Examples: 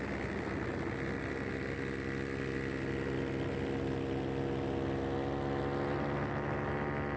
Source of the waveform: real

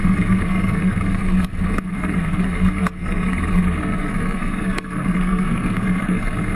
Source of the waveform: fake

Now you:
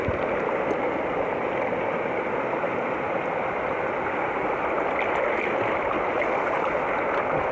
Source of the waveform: real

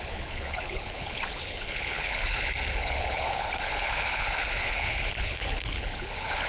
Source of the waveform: fake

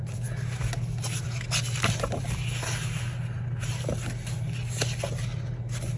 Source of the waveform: real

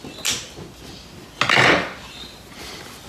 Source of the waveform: real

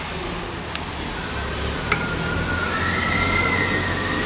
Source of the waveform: real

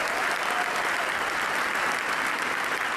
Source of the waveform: real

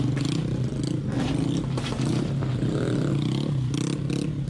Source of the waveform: real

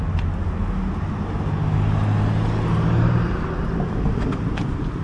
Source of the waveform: real